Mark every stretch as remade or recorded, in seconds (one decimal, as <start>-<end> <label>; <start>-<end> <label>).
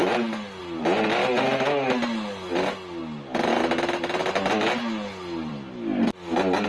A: 0.0-6.7 recorded